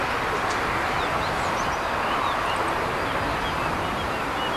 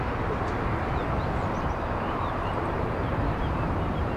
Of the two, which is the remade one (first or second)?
second